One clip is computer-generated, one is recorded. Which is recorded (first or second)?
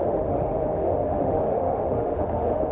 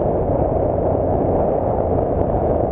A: second